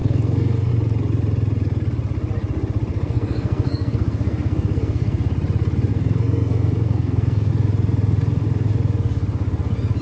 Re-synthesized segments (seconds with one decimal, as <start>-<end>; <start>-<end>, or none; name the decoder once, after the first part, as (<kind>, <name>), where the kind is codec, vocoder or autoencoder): 0.0-0.7 (codec, SNAC); 2.9-5.3; 5.9-7.5